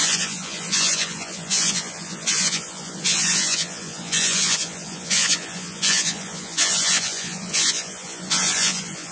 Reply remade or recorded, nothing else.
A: remade